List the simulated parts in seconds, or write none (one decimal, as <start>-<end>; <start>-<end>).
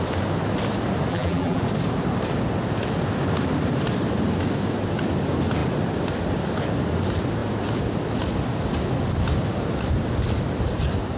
1.1-1.6